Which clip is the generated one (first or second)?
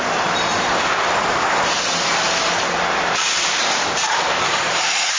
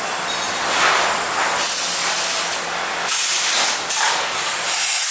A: first